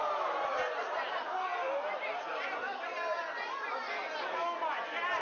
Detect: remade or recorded recorded